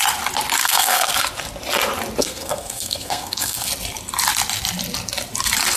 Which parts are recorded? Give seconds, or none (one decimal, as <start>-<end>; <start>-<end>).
0.0-0.6; 1.1-2.2; 3.7-5.8